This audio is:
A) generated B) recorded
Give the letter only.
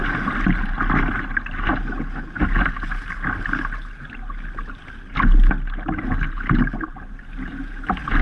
B